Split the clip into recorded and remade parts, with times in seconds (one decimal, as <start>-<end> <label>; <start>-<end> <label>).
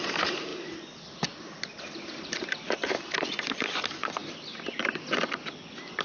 0.0-4.2 recorded; 4.2-4.7 remade; 4.7-6.0 recorded